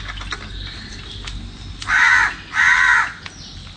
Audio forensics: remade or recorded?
recorded